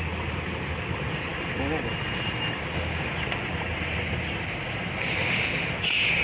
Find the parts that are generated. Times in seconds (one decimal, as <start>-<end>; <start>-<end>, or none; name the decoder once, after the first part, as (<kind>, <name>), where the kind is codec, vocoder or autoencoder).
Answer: none